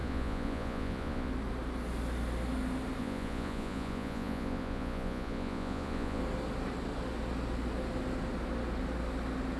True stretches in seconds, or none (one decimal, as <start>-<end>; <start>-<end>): 1.3-3.0; 6.2-9.6